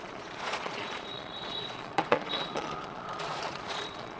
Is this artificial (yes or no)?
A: yes